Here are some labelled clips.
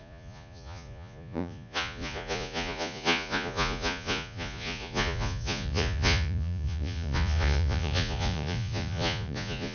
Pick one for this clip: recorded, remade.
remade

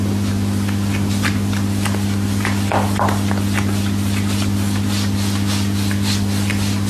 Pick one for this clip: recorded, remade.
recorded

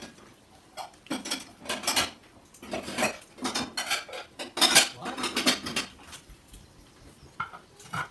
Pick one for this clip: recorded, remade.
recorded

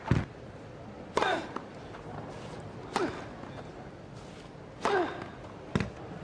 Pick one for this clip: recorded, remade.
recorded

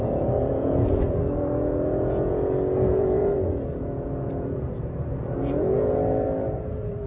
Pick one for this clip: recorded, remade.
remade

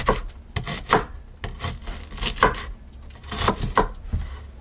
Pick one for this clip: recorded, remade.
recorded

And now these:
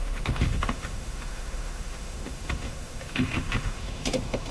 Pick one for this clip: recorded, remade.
remade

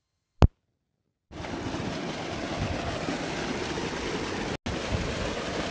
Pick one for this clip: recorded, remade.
recorded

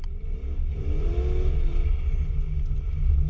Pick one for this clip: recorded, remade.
recorded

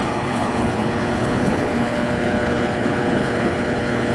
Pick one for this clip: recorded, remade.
remade